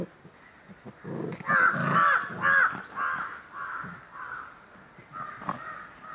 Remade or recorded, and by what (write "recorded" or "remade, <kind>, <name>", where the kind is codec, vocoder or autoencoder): recorded